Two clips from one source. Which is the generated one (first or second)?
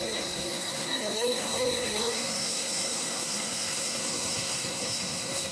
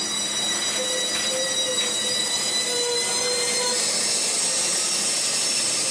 first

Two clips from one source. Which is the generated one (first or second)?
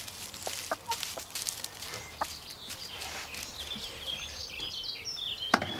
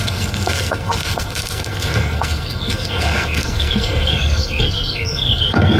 second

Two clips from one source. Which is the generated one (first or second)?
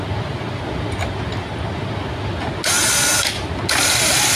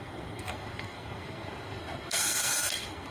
second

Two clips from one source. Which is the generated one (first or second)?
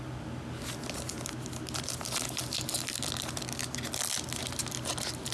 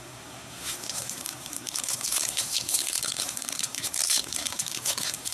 second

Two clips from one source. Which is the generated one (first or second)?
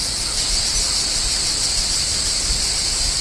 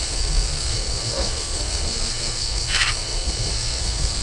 second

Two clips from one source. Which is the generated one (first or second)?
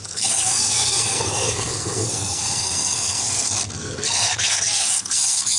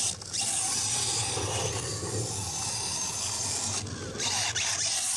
first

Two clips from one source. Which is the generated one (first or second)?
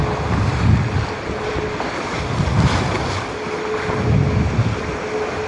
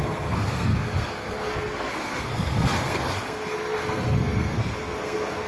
second